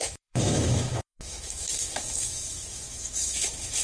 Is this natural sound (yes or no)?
no